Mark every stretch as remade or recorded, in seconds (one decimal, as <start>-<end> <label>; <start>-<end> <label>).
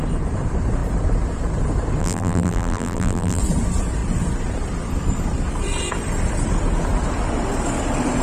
0.0-2.0 recorded; 2.0-3.4 remade; 3.4-8.2 recorded